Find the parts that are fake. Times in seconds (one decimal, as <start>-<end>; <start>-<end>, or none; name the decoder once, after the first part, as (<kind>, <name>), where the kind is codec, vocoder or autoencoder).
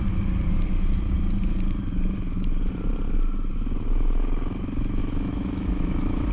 5.0-6.3 (autoencoder, DAC-VAE)